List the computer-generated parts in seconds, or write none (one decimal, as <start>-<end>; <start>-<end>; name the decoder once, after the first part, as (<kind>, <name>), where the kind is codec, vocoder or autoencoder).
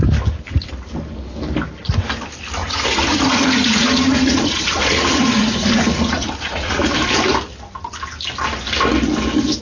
2.6-6.8 (vocoder, Vocos)